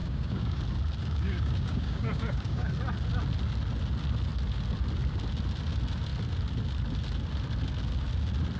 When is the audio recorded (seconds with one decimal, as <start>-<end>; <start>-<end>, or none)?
0.6-1.0; 2.7-8.6